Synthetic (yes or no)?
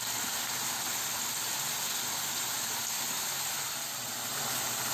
no